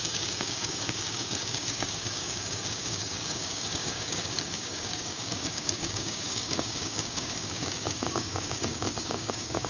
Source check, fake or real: fake